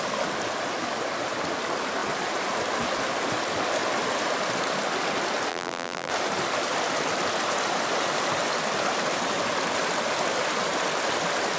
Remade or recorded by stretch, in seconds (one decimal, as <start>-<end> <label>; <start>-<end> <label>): 0.0-5.5 recorded; 5.5-6.1 remade; 6.1-11.6 recorded